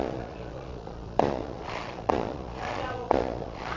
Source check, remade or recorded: remade